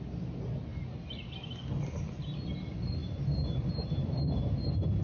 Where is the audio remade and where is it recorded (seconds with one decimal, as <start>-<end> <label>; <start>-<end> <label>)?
0.0-3.0 recorded; 3.0-5.0 remade